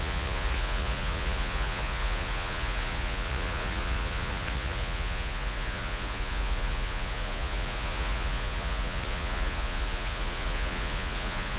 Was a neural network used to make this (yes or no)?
yes